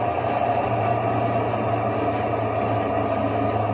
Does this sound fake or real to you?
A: real